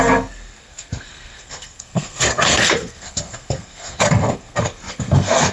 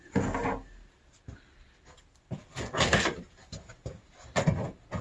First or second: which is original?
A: second